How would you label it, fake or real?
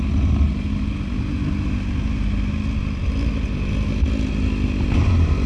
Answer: real